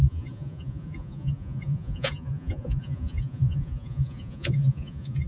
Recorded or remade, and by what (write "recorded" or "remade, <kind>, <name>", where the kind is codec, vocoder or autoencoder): remade, vocoder, Vocos